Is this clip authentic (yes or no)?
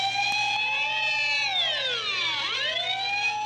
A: yes